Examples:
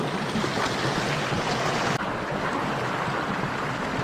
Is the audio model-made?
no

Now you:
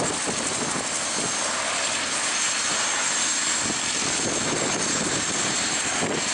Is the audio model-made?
no